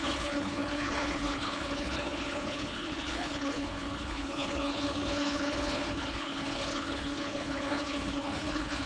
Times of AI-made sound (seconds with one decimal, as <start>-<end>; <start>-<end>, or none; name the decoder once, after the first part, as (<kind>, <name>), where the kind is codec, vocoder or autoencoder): 0.0-8.9 (codec, HILCodec)